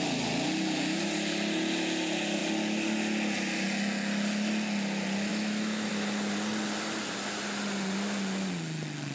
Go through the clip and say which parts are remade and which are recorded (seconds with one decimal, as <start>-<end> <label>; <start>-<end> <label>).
0.0-5.3 recorded; 5.3-5.9 remade; 5.9-9.1 recorded